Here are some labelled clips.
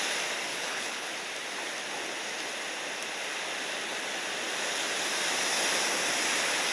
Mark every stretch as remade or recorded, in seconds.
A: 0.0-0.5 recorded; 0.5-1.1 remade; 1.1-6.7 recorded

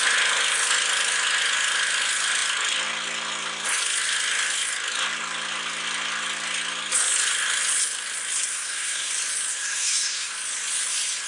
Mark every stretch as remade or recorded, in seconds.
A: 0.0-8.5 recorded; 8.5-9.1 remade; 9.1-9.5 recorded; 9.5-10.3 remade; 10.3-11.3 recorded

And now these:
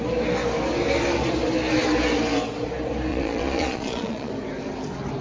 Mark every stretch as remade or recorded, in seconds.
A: 0.0-3.1 recorded; 3.1-4.3 remade; 4.3-5.2 recorded

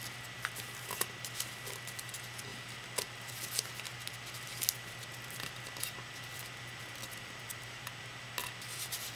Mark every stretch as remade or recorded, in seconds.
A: 0.0-9.2 recorded

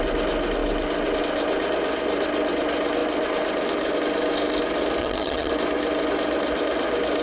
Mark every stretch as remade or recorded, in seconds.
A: 0.0-5.0 recorded; 5.0-5.5 remade; 5.5-7.2 recorded

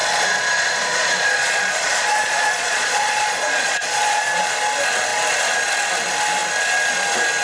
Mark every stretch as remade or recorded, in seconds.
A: 0.0-4.4 remade; 4.4-7.4 recorded

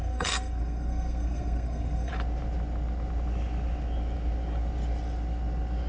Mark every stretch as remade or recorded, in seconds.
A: 0.0-2.1 remade; 2.1-5.9 recorded

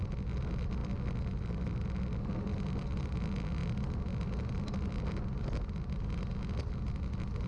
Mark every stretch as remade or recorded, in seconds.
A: 0.0-7.5 recorded